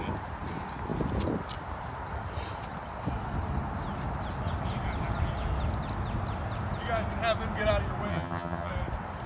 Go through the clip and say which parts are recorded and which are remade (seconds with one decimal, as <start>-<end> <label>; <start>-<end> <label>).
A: 0.0-8.1 recorded; 8.1-8.7 remade; 8.7-9.3 recorded